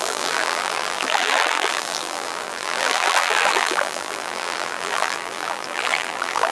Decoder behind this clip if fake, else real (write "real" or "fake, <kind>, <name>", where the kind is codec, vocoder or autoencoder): fake, vocoder, BigVGAN v2